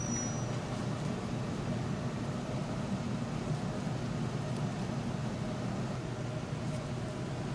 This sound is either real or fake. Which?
real